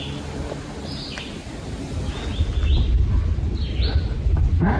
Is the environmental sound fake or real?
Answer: real